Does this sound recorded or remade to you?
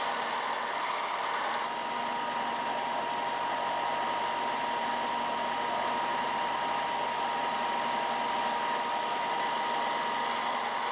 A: recorded